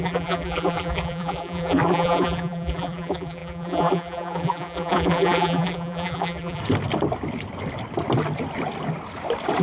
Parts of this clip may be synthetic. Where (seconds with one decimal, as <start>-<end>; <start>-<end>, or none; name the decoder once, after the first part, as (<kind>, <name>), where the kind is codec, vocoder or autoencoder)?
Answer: 0.0-6.6 (vocoder, BigVGAN v2)